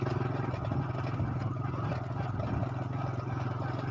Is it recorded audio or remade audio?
recorded